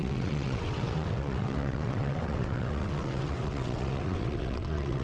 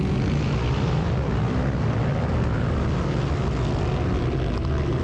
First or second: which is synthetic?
first